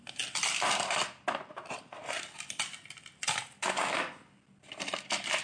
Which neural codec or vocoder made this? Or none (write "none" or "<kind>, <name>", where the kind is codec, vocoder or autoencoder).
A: none